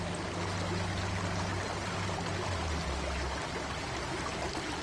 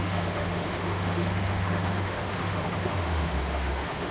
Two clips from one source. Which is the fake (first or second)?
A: second